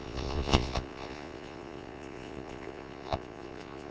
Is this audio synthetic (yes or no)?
yes